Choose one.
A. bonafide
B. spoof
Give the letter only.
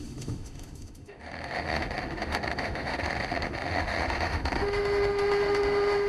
B